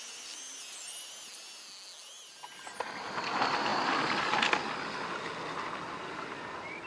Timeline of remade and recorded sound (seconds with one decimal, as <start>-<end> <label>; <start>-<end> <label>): 0.0-6.9 recorded